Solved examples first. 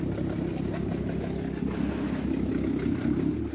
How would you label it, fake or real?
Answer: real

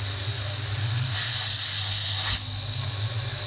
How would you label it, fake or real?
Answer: real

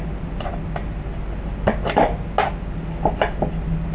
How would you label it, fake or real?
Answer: real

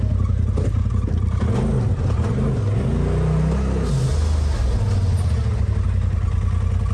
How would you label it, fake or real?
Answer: real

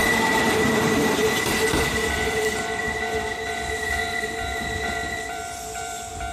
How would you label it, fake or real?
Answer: fake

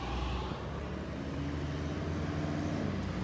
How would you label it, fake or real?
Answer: real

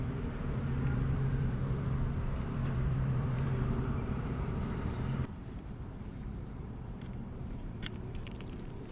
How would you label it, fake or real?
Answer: fake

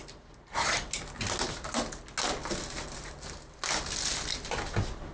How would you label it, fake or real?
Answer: real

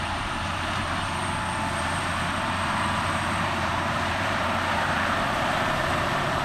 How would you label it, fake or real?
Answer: fake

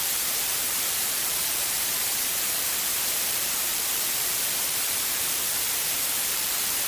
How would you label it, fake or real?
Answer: fake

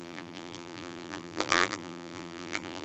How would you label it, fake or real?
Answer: fake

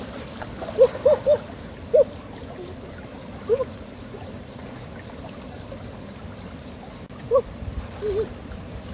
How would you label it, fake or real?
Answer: real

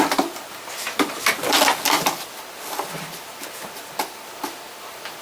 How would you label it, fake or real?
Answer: real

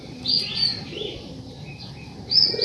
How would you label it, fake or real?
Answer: fake